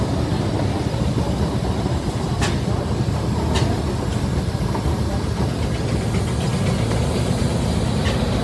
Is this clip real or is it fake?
real